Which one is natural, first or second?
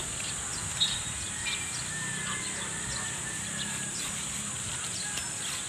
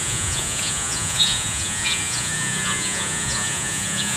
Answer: first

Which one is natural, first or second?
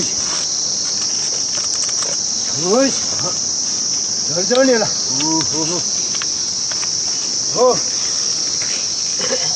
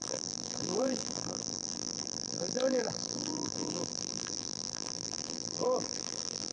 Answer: first